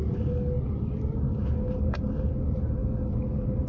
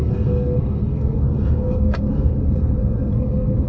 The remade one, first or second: second